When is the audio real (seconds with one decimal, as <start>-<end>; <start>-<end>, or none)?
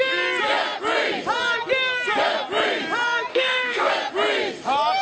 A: 0.0-3.3; 3.9-5.0